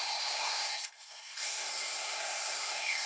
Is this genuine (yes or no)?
no